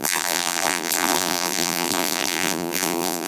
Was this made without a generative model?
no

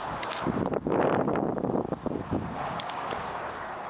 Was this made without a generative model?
no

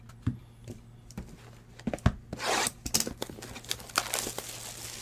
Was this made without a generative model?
yes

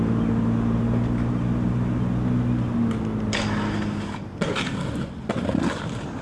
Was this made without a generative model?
yes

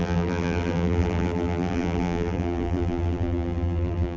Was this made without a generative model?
no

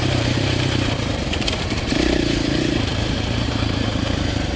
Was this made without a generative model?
no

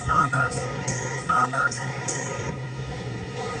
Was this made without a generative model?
no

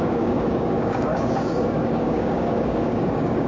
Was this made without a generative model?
no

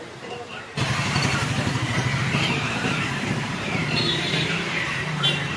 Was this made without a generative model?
no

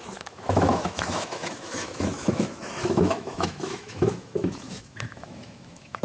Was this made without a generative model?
no